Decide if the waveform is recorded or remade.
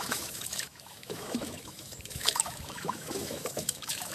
remade